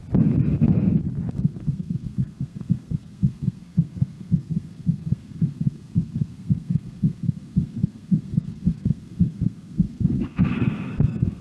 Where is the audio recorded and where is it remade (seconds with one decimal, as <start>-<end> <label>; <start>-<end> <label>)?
0.0-1.3 recorded; 1.3-11.4 remade